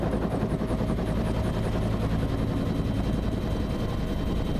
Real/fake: real